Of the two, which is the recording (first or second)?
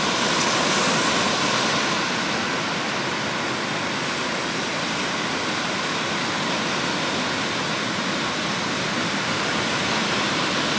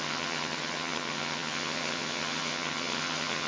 first